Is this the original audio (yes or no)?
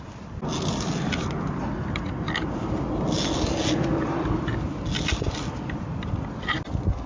yes